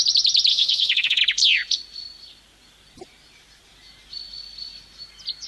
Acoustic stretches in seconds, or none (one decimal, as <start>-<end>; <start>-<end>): 0.0-0.5; 1.2-5.5